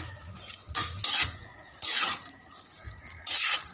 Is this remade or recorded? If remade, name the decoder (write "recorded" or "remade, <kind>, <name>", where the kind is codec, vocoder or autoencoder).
remade, vocoder, Vocos